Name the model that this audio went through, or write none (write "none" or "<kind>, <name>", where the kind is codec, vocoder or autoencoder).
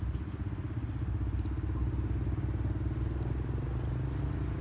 none